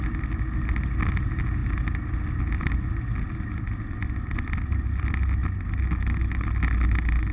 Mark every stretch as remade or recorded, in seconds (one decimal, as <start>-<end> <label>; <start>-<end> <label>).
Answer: 0.0-7.3 recorded